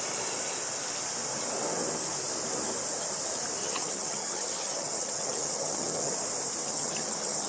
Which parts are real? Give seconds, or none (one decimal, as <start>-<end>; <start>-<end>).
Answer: 0.0-3.6; 6.1-6.6

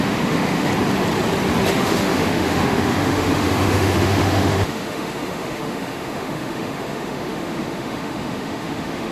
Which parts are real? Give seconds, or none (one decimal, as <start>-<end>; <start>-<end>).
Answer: 0.7-1.7

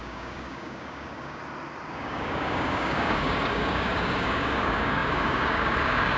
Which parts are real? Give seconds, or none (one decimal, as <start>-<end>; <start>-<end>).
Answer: 1.4-1.9

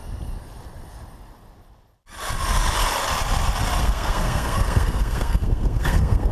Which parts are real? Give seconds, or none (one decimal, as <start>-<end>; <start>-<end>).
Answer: 0.0-3.8

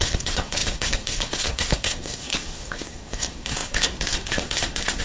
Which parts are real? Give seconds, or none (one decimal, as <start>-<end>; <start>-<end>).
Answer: none

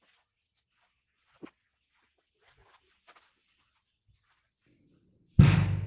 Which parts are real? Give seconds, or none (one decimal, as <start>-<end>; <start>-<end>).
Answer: 0.0-5.9

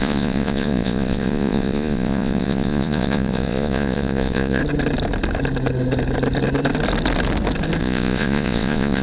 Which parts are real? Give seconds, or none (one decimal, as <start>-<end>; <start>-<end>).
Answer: 4.6-7.8